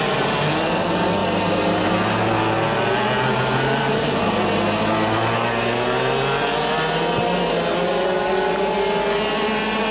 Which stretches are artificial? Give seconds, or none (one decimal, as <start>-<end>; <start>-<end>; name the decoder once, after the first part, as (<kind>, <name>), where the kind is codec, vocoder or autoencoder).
none